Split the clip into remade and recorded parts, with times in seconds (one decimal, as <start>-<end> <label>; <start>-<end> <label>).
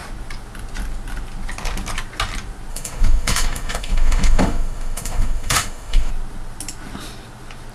0.0-2.7 recorded; 2.7-6.1 remade; 6.1-7.7 recorded